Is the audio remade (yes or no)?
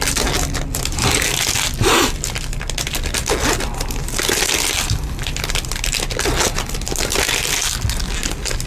no